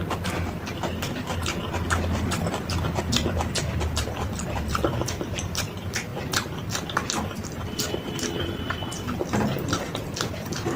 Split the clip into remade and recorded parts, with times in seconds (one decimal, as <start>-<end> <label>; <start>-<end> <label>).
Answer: 0.0-6.1 remade; 6.1-8.0 recorded; 8.0-10.8 remade